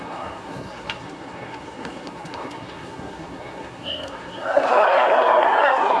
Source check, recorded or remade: remade